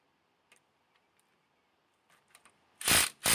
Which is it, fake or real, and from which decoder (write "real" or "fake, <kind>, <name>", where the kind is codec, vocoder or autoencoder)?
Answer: real